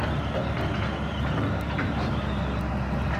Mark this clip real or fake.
real